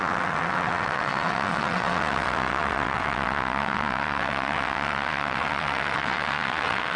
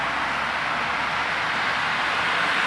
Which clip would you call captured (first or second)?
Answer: second